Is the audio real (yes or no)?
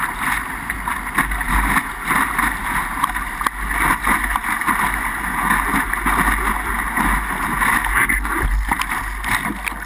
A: yes